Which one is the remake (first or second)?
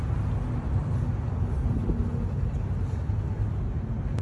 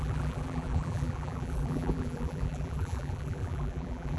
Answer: second